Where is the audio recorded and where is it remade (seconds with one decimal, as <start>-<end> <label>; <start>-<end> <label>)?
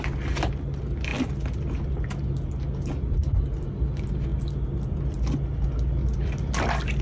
0.0-1.1 recorded; 1.1-2.2 remade; 2.2-4.3 recorded; 4.3-5.2 remade; 5.2-6.0 recorded; 6.0-7.0 remade